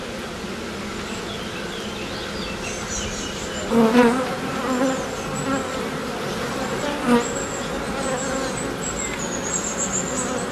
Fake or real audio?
real